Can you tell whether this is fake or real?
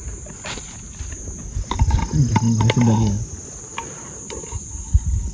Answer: real